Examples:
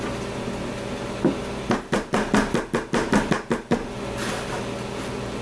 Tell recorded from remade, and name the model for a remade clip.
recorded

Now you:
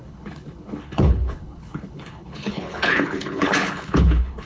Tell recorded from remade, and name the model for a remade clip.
remade, codec, HILCodec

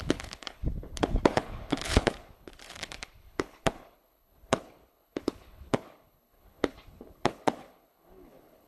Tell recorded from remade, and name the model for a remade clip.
remade, codec, HILCodec